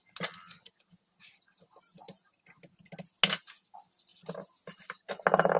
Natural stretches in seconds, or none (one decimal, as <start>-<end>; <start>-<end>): 0.0-5.6